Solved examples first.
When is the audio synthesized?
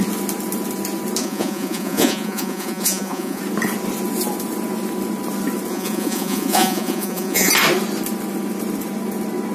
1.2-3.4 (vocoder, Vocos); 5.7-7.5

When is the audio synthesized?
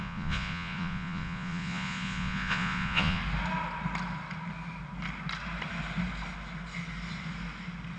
0.0-3.2 (vocoder, Vocos)